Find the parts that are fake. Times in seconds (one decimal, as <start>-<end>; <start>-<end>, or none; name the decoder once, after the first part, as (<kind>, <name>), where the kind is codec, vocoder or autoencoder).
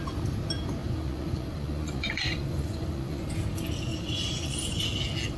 0.8-3.3 (vocoder, Vocos); 3.9-4.8